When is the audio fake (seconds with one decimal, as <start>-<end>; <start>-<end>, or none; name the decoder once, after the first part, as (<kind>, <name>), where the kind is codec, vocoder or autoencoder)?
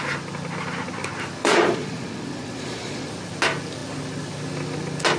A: 1.4-3.1 (vocoder, Vocos)